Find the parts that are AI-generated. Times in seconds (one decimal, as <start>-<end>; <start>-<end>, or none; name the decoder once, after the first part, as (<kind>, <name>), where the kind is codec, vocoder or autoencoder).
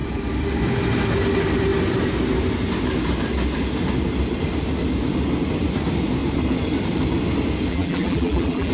7.7-8.7 (vocoder, BigVGAN v2)